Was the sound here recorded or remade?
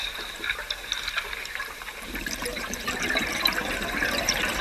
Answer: remade